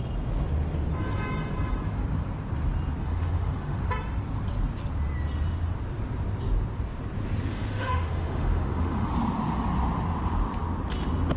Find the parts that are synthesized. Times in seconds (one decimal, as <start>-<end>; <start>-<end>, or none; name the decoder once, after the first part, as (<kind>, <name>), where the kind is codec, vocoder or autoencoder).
3.0-3.8 (autoencoder, DAC-VAE); 7.5-9.1